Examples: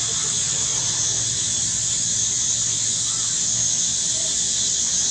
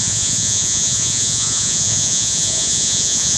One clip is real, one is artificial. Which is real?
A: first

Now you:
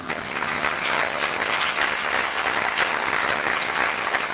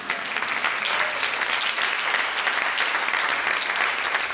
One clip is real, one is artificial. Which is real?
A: second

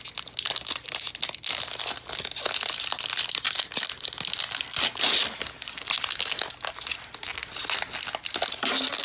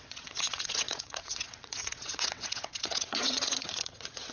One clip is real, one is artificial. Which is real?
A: first